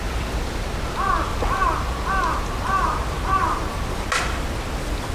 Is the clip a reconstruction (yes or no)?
no